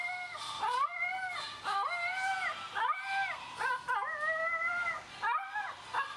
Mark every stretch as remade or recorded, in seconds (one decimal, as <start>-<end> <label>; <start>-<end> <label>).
0.0-1.1 recorded; 1.1-3.8 remade; 3.8-6.2 recorded